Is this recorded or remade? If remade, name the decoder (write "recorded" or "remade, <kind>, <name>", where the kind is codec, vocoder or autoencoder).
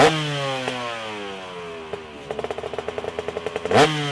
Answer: recorded